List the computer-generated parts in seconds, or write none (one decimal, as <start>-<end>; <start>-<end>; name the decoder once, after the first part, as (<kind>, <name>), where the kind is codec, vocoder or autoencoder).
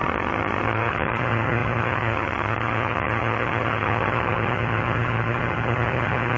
0.0-6.4 (vocoder, HiFi-GAN)